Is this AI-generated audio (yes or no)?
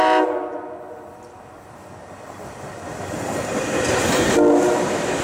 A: no